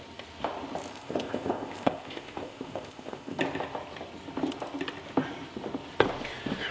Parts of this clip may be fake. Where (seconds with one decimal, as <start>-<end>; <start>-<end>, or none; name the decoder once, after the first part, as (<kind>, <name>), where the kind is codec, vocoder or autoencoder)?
0.9-3.4 (codec, ZipCodec)